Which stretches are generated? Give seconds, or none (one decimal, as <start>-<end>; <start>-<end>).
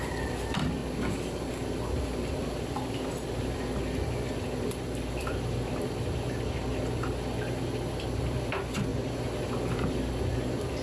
0.0-0.8; 1.5-10.8